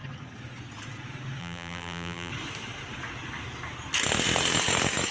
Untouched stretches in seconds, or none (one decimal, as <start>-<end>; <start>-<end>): 0.0-1.4; 2.3-5.1